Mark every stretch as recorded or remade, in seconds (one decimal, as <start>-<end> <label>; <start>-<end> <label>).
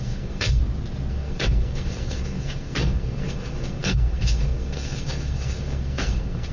0.0-0.6 remade; 0.6-1.1 recorded; 1.1-6.5 remade